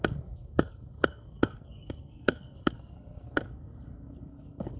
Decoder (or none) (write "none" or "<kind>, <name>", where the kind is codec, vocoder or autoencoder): codec, SNAC